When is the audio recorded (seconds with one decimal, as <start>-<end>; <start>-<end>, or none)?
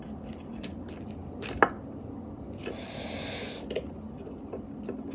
0.0-5.1